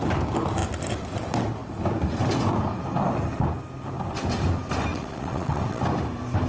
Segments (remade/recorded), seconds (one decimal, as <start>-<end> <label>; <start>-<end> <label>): 0.0-4.9 recorded; 4.9-5.8 remade; 5.8-6.5 recorded